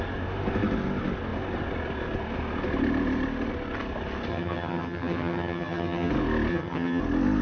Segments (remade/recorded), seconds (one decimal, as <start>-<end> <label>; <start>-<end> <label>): 0.0-4.3 recorded; 4.3-6.1 remade; 6.1-6.5 recorded; 6.5-7.0 remade; 7.0-7.4 recorded